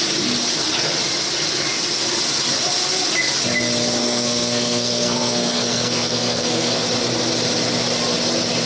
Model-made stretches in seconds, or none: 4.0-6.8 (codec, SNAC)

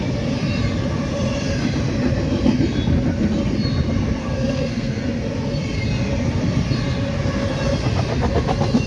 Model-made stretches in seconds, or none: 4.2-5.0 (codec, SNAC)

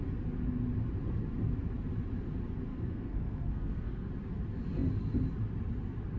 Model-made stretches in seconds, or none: 2.7-4.1 (codec, SNAC)